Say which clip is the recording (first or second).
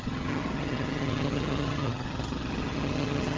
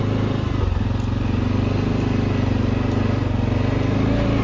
second